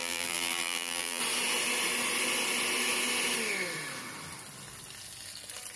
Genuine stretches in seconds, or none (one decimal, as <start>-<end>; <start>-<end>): 1.2-5.8

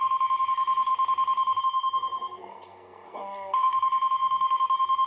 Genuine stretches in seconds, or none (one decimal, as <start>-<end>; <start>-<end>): 0.9-1.6